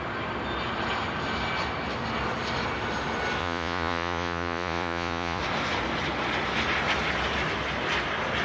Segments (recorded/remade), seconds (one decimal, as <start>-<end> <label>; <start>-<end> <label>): 0.0-3.4 recorded; 3.4-5.4 remade; 5.4-8.4 recorded